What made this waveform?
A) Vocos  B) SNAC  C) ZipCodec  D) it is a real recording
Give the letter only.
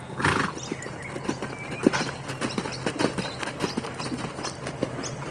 D